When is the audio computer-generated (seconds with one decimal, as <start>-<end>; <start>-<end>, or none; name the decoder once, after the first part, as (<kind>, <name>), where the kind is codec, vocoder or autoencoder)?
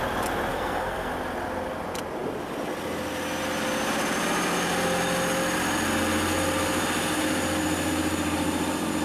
0.5-1.1 (codec, SNAC)